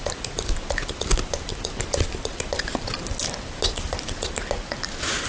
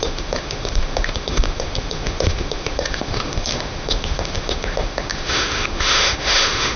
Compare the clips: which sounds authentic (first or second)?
first